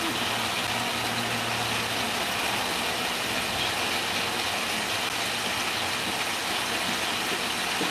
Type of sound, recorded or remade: recorded